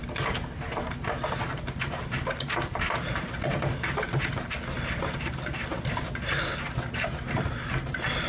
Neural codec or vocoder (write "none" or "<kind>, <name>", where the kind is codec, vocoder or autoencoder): none